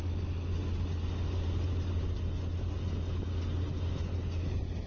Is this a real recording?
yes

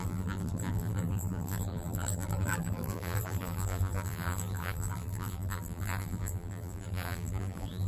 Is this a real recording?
no